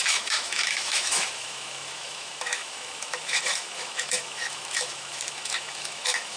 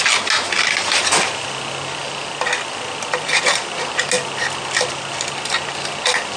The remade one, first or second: first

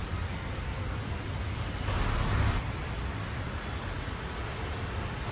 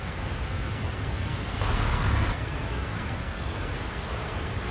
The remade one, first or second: second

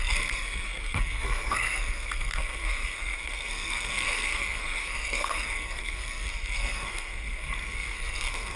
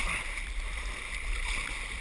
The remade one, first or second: first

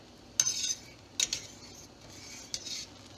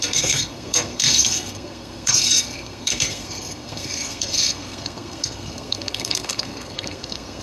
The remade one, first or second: second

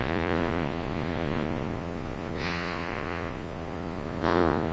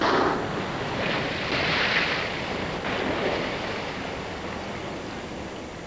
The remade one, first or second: first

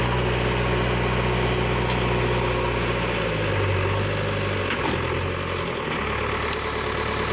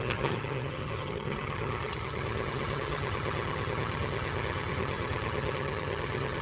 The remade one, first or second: second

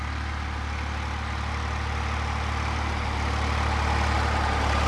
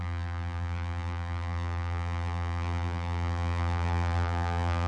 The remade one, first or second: second